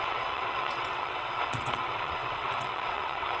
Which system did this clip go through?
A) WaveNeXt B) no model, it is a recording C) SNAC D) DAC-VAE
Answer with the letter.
A